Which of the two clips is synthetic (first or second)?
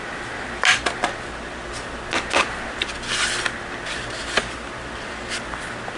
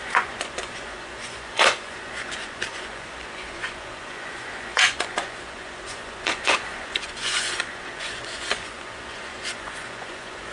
second